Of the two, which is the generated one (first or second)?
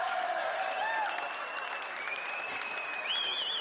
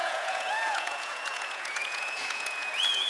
second